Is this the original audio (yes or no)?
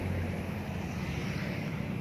yes